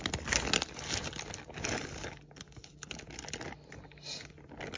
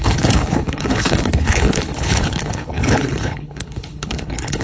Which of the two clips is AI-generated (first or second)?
second